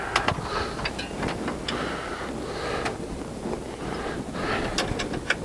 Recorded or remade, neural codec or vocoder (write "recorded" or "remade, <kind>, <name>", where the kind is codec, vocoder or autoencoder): recorded